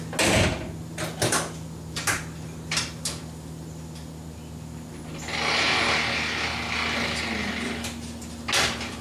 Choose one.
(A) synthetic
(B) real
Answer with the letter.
B